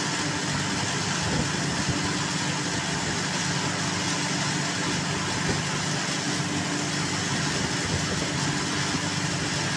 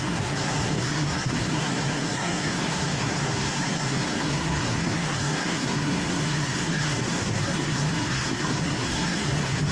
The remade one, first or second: second